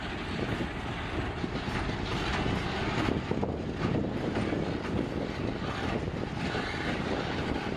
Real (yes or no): yes